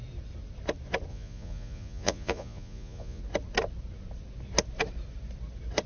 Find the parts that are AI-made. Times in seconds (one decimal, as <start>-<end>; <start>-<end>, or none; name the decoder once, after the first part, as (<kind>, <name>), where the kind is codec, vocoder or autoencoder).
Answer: 1.1-3.2 (vocoder, Vocos)